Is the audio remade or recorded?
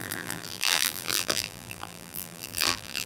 remade